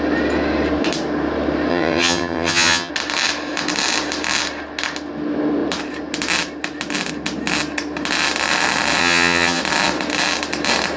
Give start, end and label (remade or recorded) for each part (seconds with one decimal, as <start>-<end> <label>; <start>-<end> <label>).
0.0-1.7 recorded; 1.7-2.9 remade; 2.9-9.0 recorded; 9.0-9.6 remade; 9.6-11.0 recorded